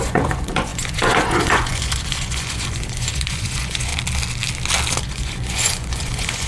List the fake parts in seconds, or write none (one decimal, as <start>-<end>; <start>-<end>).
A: 0.0-3.9; 5.0-6.5